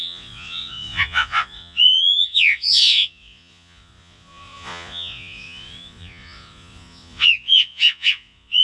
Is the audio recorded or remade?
remade